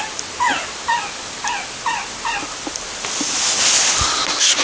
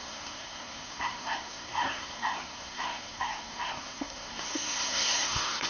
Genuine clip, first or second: first